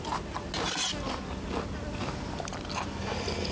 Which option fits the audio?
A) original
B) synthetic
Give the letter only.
A